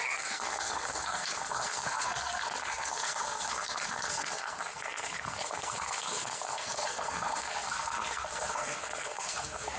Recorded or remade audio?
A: remade